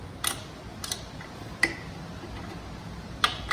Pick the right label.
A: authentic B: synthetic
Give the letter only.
A